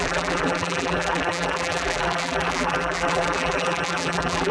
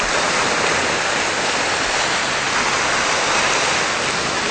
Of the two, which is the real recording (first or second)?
second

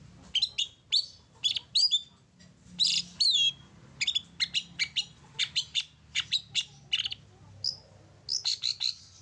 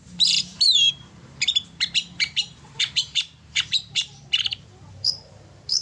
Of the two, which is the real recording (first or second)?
first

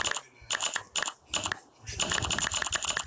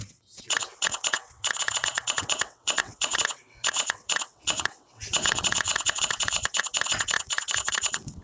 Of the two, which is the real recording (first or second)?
first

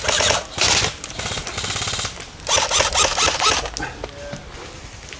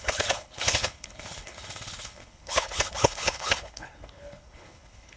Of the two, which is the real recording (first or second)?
first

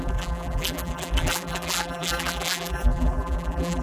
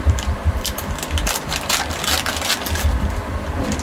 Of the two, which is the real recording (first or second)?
second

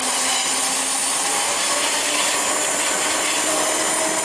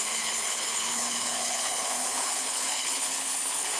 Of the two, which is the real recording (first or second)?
first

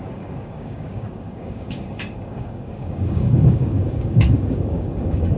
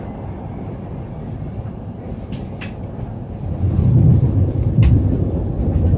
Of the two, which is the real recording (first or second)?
second